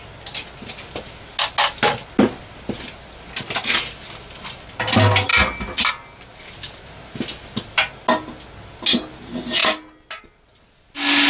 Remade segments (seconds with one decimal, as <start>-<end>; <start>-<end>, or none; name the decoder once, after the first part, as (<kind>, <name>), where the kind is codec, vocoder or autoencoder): none